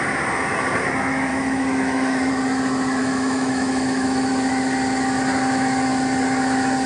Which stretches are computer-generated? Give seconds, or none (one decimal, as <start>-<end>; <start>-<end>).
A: 1.3-2.3; 3.0-4.3